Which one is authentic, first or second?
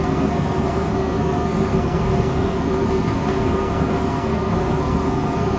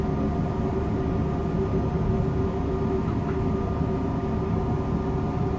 second